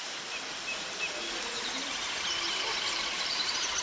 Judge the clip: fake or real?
real